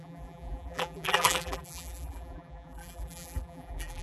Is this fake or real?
fake